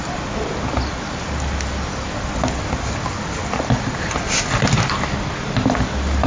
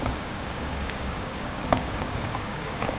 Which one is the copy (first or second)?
second